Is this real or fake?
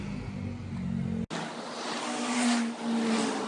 real